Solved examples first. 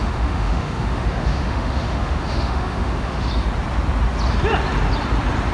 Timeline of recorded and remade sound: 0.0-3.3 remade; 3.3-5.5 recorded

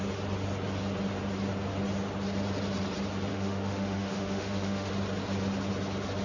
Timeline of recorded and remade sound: 0.0-3.3 recorded; 3.3-4.9 remade; 4.9-6.2 recorded

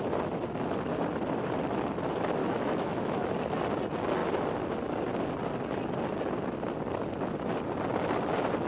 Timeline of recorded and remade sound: 0.0-2.4 recorded; 2.4-3.3 remade; 3.3-8.7 recorded

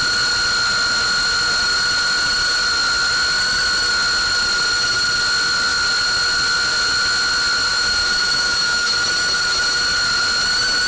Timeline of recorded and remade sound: 0.0-7.7 recorded; 7.7-8.9 remade; 8.9-10.9 recorded

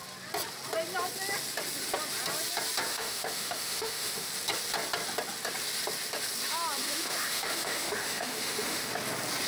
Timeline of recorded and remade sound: 0.0-2.9 recorded; 2.9-4.3 remade; 4.3-6.8 recorded; 6.8-8.9 remade; 8.9-9.5 recorded

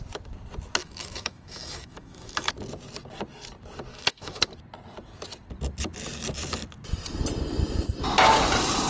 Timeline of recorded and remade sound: 0.0-0.8 recorded; 0.8-2.5 remade; 2.5-3.9 recorded; 3.9-4.4 remade; 4.4-8.9 recorded